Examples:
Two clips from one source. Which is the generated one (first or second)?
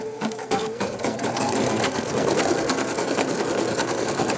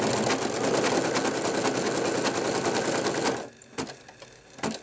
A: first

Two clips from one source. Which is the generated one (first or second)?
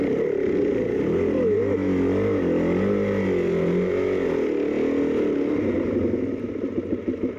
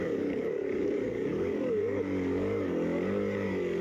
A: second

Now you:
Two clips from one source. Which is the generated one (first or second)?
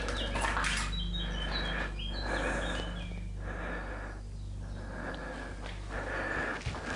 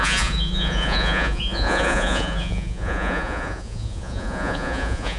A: second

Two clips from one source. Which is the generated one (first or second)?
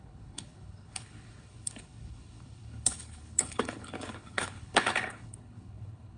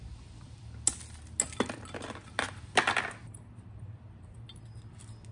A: first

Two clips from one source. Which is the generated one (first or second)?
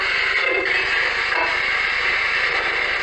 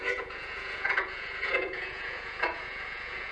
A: second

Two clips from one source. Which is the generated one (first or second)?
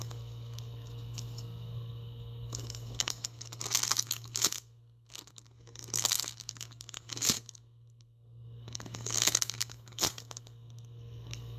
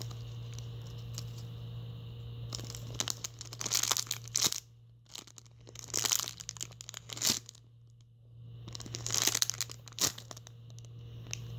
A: first